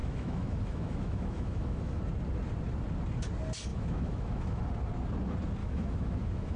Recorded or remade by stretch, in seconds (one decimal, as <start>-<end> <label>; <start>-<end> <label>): 0.0-2.0 remade; 2.0-3.7 recorded; 3.7-4.6 remade; 4.6-5.6 recorded; 5.6-6.6 remade